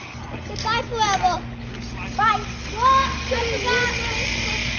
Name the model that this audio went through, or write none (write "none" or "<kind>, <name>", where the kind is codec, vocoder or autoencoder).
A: none